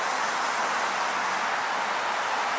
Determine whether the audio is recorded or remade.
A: recorded